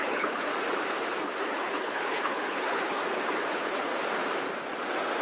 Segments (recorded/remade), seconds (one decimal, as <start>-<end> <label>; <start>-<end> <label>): 0.0-0.5 remade; 0.5-1.4 recorded; 1.4-3.0 remade; 3.0-3.5 recorded; 3.5-3.9 remade; 3.9-5.2 recorded